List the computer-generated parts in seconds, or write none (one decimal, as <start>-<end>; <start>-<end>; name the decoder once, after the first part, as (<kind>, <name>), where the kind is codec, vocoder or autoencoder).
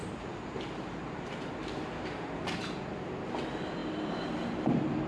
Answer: 0.0-3.1 (vocoder, BigVGAN v2)